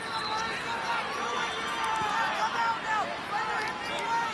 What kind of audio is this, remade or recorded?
recorded